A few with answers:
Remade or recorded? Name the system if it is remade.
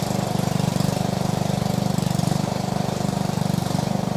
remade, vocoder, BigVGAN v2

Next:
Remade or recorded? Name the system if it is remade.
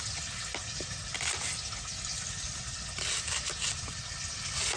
recorded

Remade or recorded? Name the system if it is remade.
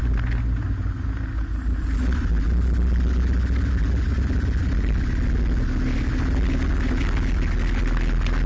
recorded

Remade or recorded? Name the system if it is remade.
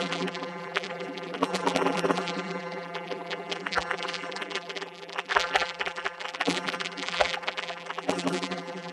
remade, vocoder, BigVGAN v2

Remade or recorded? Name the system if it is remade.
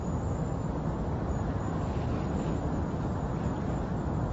recorded